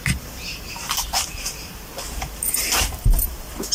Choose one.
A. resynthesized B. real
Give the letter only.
A